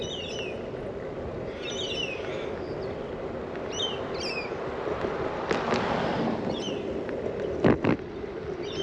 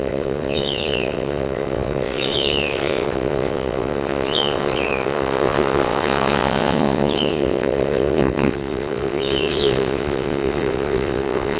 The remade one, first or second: second